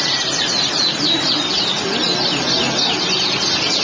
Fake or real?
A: real